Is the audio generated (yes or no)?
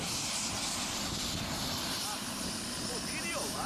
no